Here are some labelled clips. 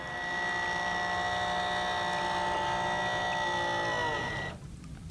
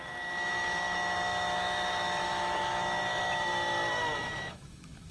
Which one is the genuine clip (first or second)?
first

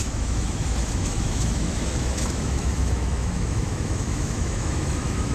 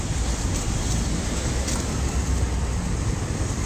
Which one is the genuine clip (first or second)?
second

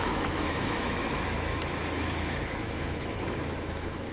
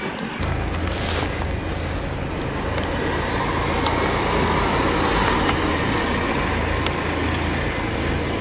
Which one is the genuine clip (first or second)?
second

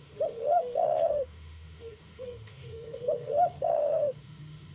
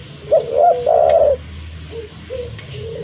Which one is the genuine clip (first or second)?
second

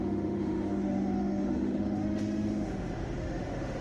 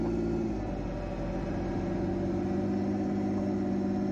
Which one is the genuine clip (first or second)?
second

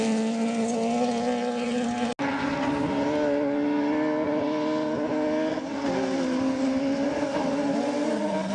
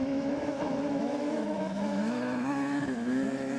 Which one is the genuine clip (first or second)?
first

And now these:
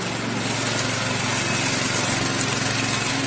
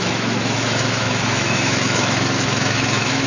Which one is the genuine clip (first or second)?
first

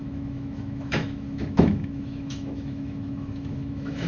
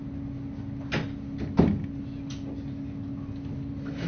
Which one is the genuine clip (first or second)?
second